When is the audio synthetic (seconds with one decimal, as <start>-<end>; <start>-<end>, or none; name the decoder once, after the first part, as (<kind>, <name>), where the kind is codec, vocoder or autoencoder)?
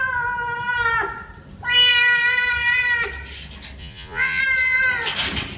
3.8-4.4 (vocoder, Vocos)